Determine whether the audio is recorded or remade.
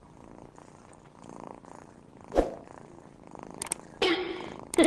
recorded